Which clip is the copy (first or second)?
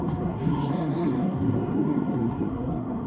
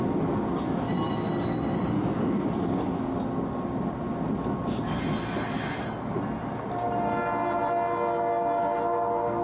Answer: first